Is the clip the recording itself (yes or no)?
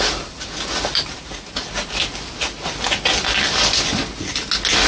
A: yes